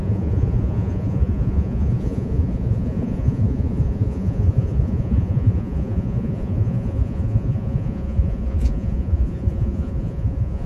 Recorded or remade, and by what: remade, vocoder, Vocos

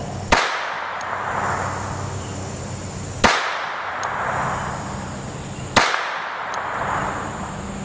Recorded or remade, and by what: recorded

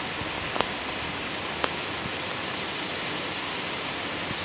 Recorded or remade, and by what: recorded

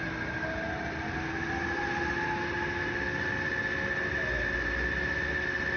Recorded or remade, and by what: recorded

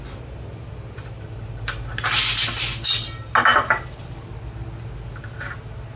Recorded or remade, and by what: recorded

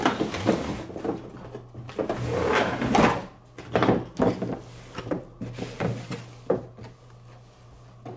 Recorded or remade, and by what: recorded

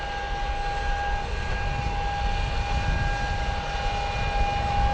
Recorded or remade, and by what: recorded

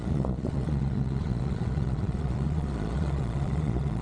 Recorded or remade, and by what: remade, vocoder, Vocos